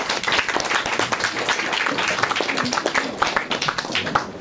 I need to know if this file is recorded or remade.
recorded